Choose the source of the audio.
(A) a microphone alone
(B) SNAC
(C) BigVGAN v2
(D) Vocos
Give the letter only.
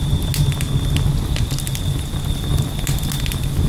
A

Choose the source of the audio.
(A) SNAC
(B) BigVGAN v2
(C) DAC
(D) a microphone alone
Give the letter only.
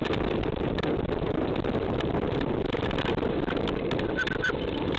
D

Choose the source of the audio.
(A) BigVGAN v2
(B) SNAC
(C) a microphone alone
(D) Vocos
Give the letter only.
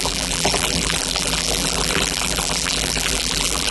A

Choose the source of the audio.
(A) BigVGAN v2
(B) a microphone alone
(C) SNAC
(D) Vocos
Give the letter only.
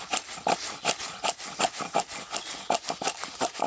B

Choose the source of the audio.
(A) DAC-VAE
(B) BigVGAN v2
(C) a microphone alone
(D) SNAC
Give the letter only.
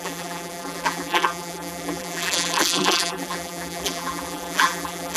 B